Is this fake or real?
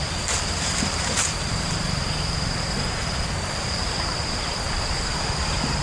fake